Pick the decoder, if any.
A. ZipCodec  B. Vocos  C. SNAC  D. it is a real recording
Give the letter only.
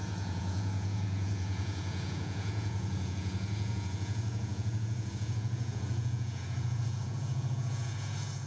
B